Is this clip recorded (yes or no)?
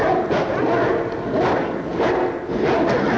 yes